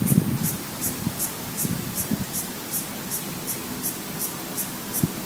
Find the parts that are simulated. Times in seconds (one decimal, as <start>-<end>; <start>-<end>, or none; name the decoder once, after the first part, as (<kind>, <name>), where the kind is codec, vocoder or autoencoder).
0.4-2.0 (vocoder, BigVGAN v2)